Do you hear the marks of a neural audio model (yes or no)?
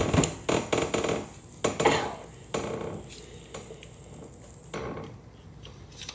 no